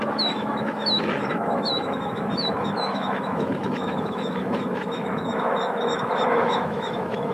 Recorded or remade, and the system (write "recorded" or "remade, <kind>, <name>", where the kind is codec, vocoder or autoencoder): remade, autoencoder, DAC-VAE